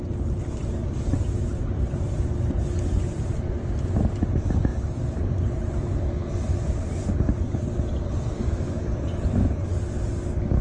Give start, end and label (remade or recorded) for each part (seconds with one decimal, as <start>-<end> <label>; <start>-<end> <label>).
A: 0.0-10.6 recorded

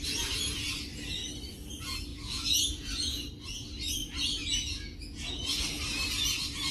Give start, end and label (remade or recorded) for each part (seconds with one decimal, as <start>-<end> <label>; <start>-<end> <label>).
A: 0.0-2.1 recorded; 2.1-3.3 remade; 3.3-4.0 recorded; 4.0-5.8 remade; 5.8-6.7 recorded

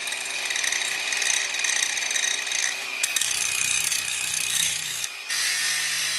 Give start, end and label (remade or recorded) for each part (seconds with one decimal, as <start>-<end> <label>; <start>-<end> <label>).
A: 0.0-2.6 recorded; 2.6-5.3 remade; 5.3-6.2 recorded

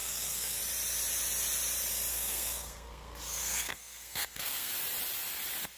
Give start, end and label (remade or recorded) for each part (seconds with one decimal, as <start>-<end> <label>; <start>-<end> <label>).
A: 0.0-0.6 remade; 0.6-2.1 recorded; 2.1-4.7 remade; 4.7-5.8 recorded

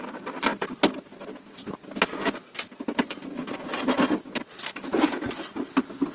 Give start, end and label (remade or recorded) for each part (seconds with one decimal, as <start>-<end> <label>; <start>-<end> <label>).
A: 0.0-6.1 recorded